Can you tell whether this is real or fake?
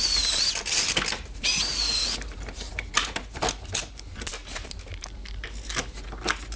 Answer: real